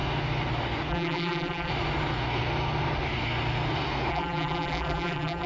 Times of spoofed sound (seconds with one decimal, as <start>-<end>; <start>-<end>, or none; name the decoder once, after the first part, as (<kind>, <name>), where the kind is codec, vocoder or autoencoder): 0.9-1.7 (vocoder, BigVGAN v2); 4.1-5.5